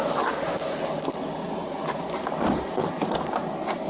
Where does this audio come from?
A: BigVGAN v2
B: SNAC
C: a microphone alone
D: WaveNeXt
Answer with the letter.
C